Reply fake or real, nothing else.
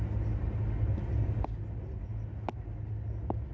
real